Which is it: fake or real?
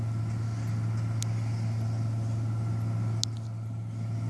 real